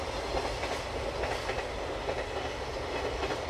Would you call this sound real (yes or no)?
yes